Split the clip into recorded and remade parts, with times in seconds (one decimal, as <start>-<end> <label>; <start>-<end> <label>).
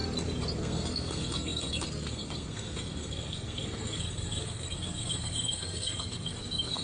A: 0.0-0.6 recorded; 0.6-6.8 remade